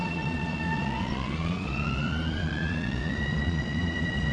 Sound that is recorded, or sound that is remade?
remade